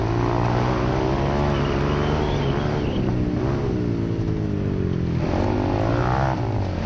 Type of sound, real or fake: real